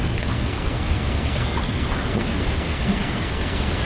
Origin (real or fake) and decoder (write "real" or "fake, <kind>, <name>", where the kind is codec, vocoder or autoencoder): fake, codec, SNAC